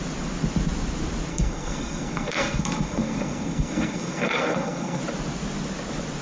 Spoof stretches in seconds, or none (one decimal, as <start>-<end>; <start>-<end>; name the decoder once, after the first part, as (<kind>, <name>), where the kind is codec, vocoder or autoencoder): 1.3-5.0 (codec, SNAC)